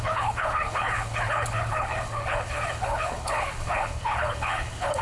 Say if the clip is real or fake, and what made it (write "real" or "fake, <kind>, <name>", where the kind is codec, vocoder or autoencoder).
fake, codec, HILCodec